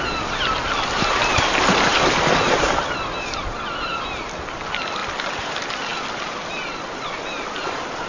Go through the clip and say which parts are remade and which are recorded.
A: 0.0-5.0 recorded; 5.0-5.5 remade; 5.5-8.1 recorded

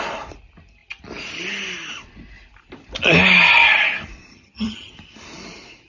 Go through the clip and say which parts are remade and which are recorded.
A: 0.0-4.3 recorded; 4.3-4.9 remade; 4.9-5.9 recorded

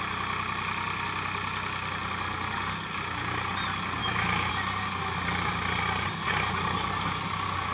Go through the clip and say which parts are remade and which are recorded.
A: 0.0-4.0 recorded; 4.0-4.5 remade; 4.5-7.7 recorded

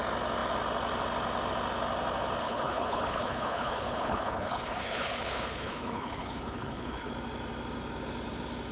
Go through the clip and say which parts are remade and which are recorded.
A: 0.0-2.4 recorded; 2.4-7.1 remade; 7.1-8.7 recorded